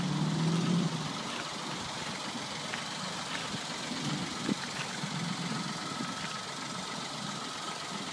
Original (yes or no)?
yes